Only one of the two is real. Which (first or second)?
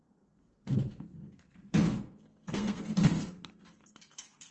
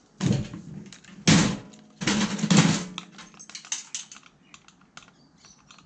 second